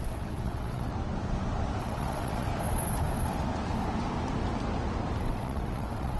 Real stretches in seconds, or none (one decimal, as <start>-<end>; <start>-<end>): 0.9-1.8; 2.5-5.2